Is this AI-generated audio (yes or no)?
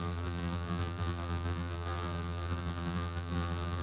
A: yes